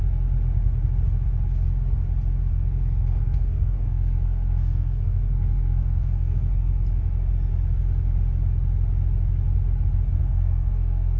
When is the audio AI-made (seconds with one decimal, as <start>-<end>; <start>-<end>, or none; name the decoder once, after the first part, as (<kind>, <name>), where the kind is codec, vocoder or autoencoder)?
2.5-6.7 (codec, SNAC); 10.2-11.2